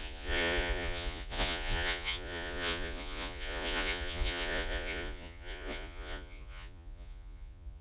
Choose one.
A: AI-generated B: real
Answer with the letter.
A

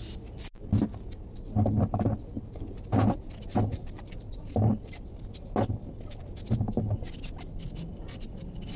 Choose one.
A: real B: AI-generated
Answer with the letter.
A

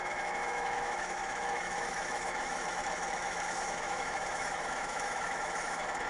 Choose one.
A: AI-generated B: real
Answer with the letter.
A